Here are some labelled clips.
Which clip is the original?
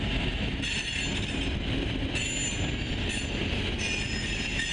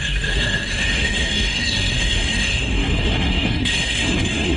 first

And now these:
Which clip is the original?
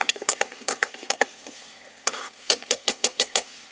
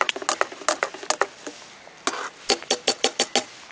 second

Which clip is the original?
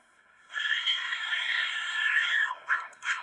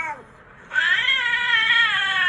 second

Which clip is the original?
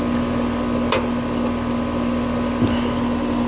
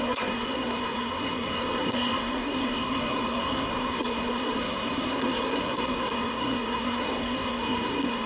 first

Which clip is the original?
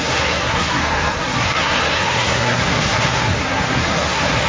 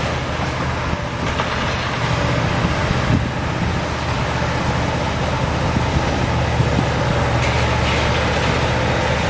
second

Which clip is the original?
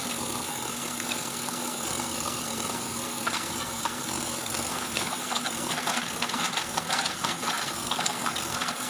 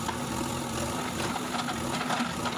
second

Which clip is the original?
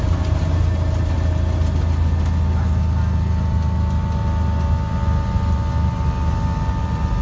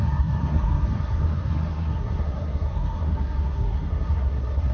first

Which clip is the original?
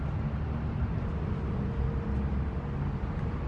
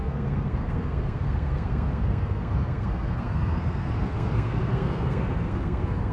first